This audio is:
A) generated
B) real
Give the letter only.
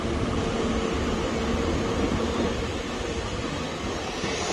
B